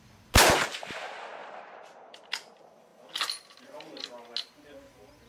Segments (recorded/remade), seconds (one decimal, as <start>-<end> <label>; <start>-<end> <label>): 0.0-1.4 recorded; 1.4-2.2 remade; 2.2-5.3 recorded